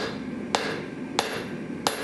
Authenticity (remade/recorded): recorded